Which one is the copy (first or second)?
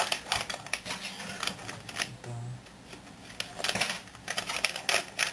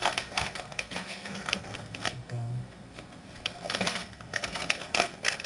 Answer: second